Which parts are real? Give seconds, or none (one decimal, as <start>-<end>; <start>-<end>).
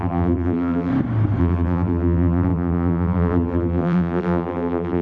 0.9-1.4